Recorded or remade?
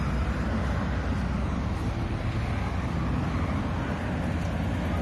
recorded